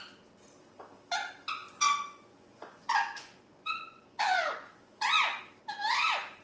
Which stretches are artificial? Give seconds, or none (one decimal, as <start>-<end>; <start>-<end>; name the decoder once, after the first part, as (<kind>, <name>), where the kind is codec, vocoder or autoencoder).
1.6-5.4 (vocoder, Vocos)